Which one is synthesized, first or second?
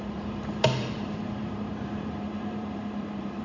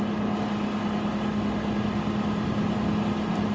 first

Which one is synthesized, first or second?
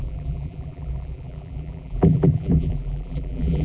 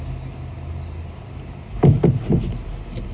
first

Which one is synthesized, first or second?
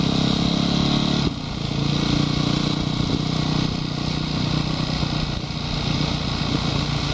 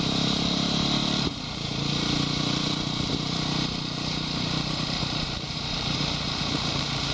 second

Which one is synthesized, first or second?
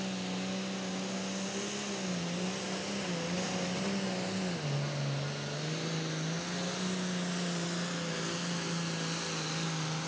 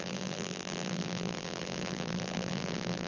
second